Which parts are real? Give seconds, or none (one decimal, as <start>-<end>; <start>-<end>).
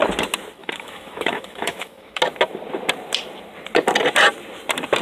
0.0-0.6; 2.2-5.0